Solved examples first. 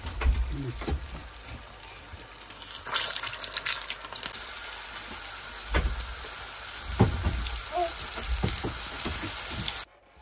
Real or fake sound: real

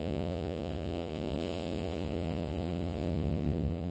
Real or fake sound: fake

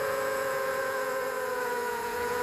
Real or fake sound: fake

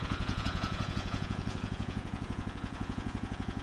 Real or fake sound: fake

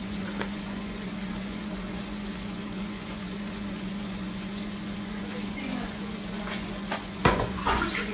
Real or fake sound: fake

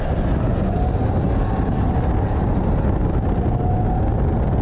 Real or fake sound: real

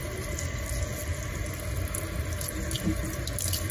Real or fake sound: real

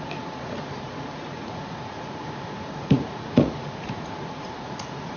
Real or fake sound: fake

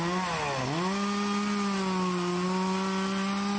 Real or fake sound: real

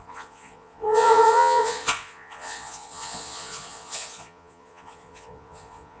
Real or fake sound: fake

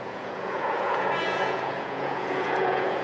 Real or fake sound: fake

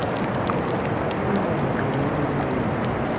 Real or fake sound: real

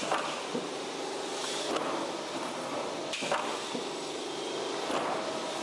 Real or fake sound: real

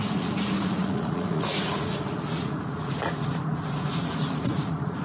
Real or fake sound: fake